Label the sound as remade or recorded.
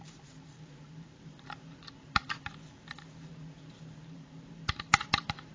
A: remade